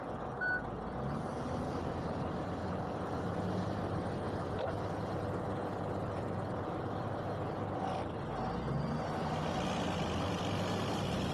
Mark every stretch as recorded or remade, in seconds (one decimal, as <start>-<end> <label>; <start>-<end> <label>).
0.0-11.3 recorded